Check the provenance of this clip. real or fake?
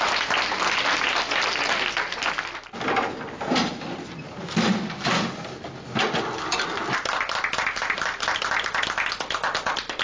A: real